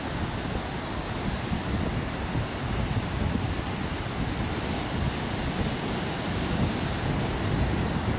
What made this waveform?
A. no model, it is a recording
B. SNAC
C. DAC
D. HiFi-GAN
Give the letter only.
A